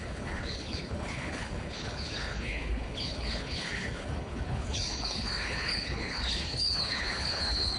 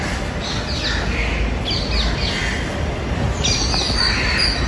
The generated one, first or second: first